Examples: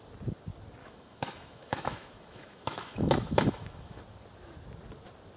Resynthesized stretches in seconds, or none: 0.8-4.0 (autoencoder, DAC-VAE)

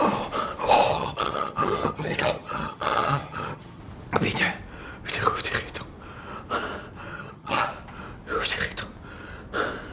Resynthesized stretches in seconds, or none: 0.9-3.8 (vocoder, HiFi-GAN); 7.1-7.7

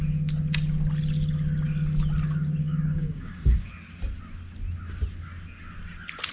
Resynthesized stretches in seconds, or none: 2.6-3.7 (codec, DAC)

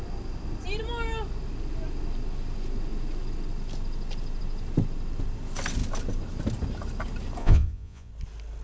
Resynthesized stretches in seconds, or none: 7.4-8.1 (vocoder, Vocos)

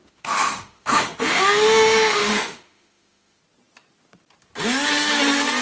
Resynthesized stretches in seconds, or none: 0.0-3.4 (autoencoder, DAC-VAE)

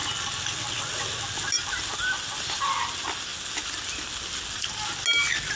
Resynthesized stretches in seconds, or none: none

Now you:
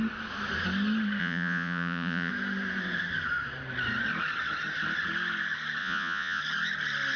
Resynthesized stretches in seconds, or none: 1.2-2.3 (vocoder, Vocos); 5.8-6.4

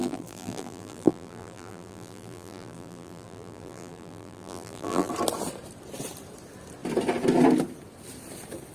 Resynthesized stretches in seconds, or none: 0.0-5.1 (vocoder, BigVGAN v2)